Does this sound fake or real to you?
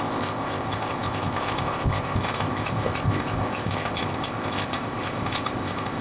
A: fake